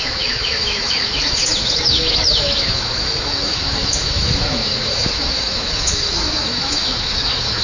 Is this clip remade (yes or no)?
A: yes